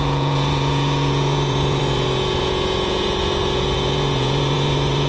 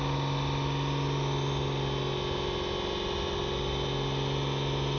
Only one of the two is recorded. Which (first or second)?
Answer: second